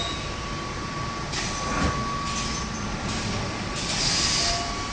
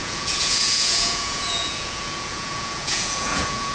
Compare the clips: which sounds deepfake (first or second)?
second